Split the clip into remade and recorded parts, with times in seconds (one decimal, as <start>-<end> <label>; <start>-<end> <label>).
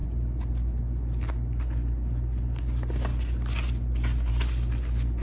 0.0-5.2 recorded